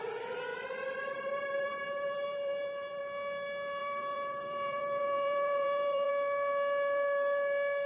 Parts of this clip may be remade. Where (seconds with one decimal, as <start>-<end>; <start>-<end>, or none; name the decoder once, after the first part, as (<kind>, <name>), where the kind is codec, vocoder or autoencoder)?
0.5-3.0 (vocoder, BigVGAN v2); 3.8-6.1